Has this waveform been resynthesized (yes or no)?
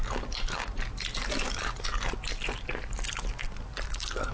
no